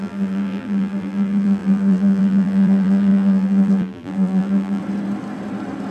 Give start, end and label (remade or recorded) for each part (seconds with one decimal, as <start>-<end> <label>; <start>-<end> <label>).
0.0-4.8 remade; 4.8-5.9 recorded